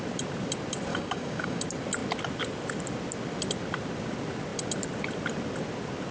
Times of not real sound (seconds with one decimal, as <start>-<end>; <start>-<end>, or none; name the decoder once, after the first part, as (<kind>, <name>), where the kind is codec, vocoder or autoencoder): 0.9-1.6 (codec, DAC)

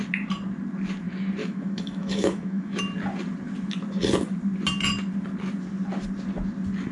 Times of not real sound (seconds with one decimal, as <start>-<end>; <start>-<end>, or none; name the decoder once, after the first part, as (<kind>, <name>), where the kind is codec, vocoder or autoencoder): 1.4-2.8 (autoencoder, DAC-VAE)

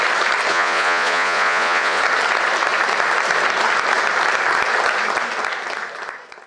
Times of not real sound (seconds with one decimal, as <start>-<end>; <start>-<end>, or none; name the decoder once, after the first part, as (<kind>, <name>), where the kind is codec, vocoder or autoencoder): 0.5-2.0 (vocoder, Vocos)

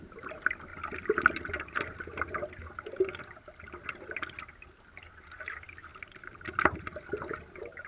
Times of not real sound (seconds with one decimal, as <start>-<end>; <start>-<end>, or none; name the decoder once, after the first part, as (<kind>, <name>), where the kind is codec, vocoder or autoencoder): none

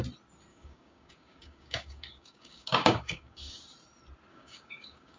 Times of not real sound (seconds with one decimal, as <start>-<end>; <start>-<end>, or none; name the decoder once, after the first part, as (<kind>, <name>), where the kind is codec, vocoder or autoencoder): 0.5-3.6 (codec, DAC); 4.3-5.2

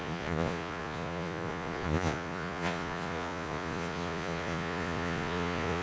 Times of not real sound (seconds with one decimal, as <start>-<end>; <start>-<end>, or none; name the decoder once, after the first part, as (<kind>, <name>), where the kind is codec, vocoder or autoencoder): 0.0-5.8 (vocoder, Vocos)

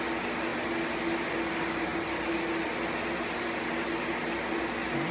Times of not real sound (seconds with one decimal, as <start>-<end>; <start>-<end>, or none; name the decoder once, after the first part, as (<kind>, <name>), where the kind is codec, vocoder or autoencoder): none

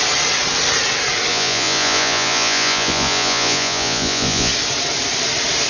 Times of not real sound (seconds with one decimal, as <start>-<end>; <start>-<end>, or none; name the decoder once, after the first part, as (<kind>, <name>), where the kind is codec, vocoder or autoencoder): 1.3-4.5 (vocoder, Vocos)